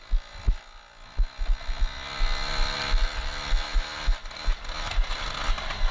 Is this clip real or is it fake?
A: real